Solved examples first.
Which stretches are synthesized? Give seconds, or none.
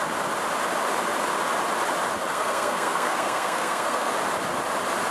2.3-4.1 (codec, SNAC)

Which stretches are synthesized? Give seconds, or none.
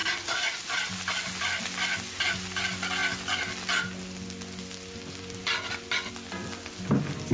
none